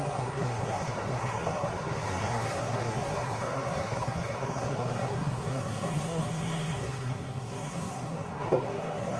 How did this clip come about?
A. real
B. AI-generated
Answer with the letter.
B